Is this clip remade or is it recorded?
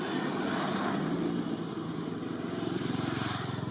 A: recorded